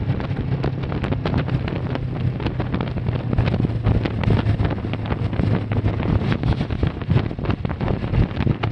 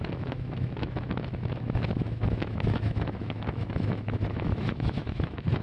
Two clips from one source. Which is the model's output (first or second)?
second